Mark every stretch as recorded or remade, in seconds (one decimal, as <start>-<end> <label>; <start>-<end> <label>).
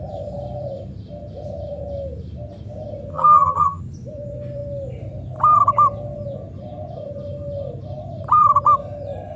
0.0-3.1 recorded; 3.1-3.8 remade; 3.8-9.4 recorded